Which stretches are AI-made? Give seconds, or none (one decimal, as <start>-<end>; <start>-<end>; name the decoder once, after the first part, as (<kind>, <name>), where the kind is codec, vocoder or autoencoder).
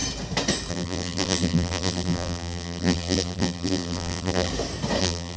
0.7-4.5 (vocoder, BigVGAN v2); 5.0-5.4